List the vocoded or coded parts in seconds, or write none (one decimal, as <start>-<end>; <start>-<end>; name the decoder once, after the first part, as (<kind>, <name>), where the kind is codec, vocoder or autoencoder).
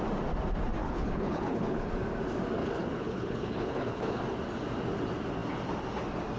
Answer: 0.8-1.9 (codec, HILCodec); 2.6-4.2